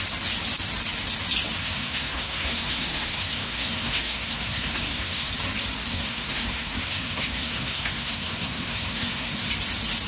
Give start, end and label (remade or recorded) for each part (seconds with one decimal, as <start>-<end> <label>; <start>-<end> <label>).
0.0-1.6 recorded; 1.6-5.3 remade; 5.3-5.9 recorded; 5.9-9.5 remade; 9.5-10.1 recorded